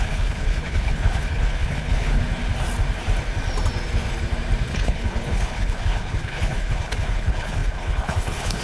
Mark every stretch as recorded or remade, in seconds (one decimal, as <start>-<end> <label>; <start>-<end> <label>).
0.0-2.2 remade; 2.2-4.7 recorded; 4.7-8.6 remade